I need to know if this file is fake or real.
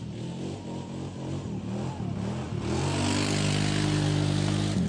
real